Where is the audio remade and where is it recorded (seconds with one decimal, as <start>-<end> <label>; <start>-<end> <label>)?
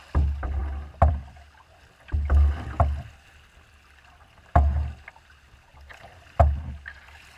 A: 0.0-5.9 recorded; 5.9-6.4 remade; 6.4-7.4 recorded